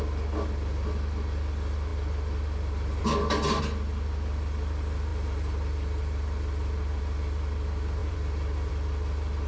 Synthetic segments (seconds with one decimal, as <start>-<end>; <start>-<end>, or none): 1.9-3.6; 5.1-7.0; 8.0-8.7